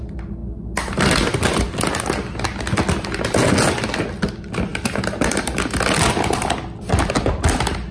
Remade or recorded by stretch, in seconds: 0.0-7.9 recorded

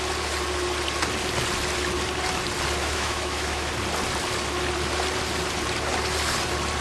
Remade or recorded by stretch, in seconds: 0.0-2.8 recorded; 2.8-3.7 remade; 3.7-6.8 recorded

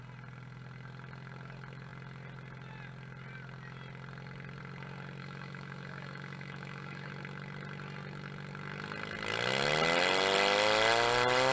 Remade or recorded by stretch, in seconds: 0.0-5.2 recorded; 5.2-7.1 remade; 7.1-11.5 recorded

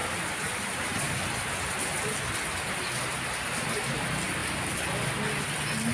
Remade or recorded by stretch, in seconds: 0.0-1.2 remade; 1.2-5.9 recorded

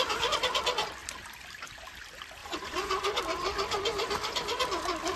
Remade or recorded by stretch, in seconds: 0.0-2.4 recorded; 2.4-3.2 remade; 3.2-5.2 recorded

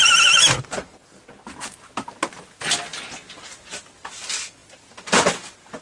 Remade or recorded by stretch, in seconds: 0.0-5.8 recorded

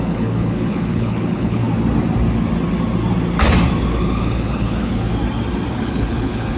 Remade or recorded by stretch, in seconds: 0.0-1.6 remade; 1.6-4.0 recorded; 4.0-5.1 remade; 5.1-5.7 recorded; 5.7-6.6 remade